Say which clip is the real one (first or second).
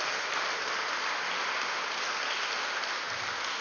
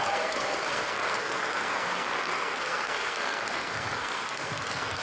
first